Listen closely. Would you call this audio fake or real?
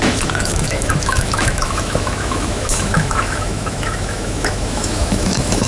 fake